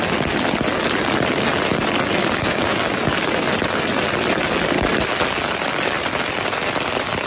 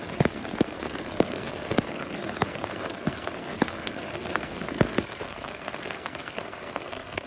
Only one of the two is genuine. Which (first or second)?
first